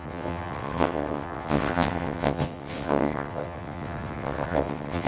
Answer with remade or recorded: remade